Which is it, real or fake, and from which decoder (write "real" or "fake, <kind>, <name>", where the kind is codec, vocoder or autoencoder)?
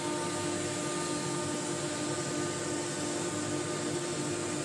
real